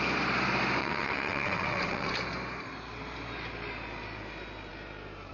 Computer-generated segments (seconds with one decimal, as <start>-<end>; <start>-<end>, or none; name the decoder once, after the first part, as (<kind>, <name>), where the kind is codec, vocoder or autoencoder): 0.8-2.1 (vocoder, WaveNeXt)